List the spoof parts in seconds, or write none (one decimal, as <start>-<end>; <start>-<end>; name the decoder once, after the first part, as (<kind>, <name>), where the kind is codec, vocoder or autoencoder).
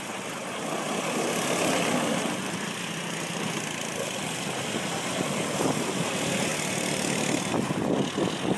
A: none